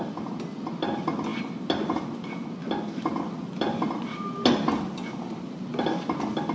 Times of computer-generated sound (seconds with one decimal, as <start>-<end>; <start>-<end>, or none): none